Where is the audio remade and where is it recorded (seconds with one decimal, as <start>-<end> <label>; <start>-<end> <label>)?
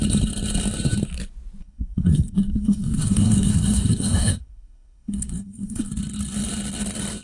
0.0-1.6 recorded; 1.6-5.9 remade; 5.9-7.2 recorded